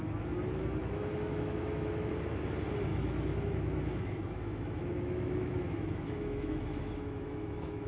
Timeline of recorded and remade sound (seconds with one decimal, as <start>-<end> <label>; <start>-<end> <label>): 0.0-0.8 recorded; 0.8-2.1 remade; 2.1-2.9 recorded; 2.9-7.9 remade